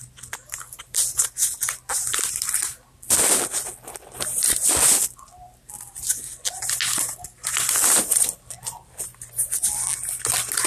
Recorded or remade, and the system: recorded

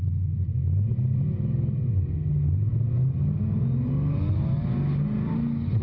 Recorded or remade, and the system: recorded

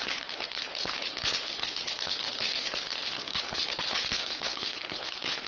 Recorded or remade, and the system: remade, codec, HILCodec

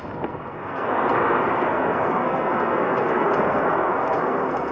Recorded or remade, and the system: remade, codec, SNAC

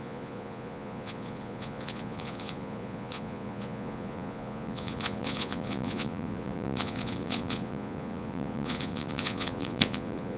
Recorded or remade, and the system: remade, vocoder, Vocos